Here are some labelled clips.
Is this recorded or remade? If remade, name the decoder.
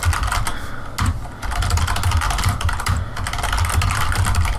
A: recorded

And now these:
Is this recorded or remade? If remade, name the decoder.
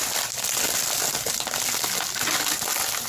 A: recorded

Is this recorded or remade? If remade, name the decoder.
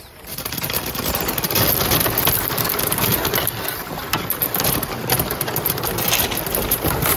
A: recorded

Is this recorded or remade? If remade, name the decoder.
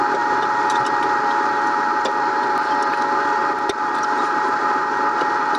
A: remade, vocoder, BigVGAN v2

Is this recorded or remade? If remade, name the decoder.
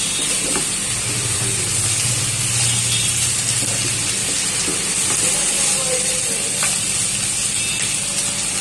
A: recorded